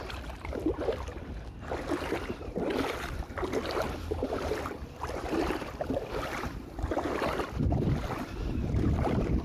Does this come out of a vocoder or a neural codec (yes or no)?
yes